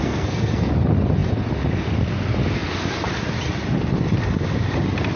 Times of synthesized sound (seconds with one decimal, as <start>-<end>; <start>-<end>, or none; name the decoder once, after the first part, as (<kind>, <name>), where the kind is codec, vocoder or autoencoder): 0.0-0.7 (codec, SNAC)